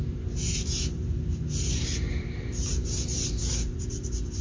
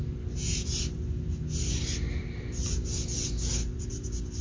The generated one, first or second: first